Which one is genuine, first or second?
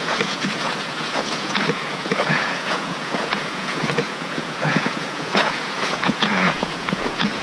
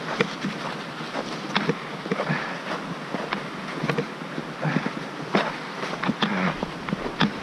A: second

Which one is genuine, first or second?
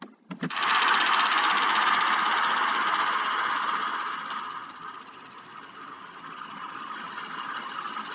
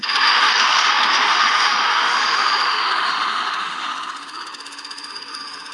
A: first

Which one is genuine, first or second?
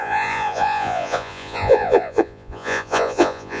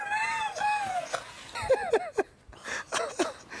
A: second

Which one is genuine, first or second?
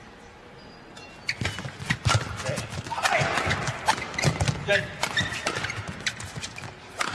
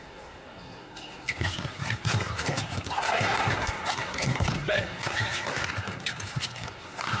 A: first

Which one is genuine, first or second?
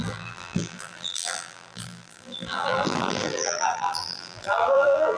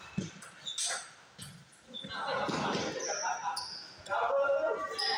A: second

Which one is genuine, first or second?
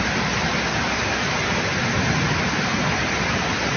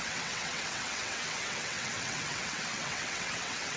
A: first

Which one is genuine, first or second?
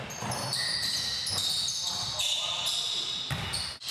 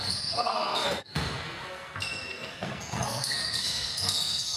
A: first